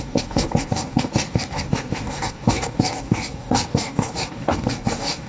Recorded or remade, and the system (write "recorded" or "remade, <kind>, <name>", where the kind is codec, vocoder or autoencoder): remade, codec, DAC